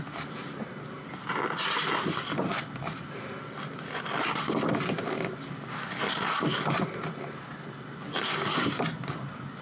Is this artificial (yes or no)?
no